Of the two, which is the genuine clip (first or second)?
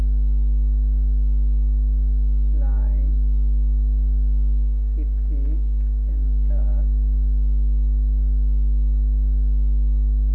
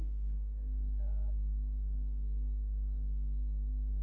first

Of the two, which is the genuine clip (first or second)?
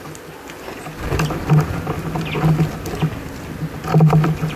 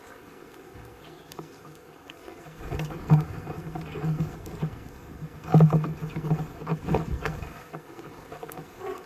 first